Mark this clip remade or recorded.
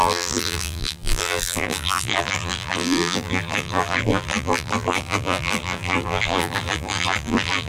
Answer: remade